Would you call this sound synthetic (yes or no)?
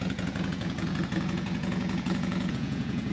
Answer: yes